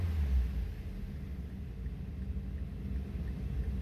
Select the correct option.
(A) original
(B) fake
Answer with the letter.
A